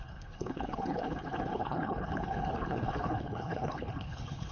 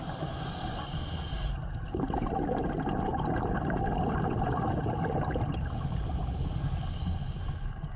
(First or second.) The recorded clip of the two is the second